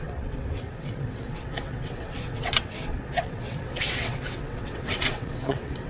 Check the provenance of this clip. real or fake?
fake